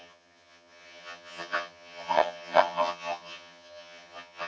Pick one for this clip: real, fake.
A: fake